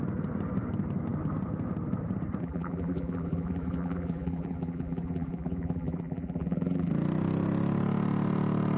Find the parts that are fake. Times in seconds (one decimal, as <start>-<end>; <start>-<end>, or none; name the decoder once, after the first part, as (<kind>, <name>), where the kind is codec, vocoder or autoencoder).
2.4-6.9 (vocoder, BigVGAN v2)